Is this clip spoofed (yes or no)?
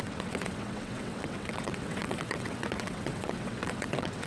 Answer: yes